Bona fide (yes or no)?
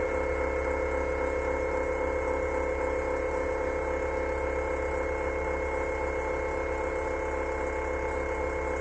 yes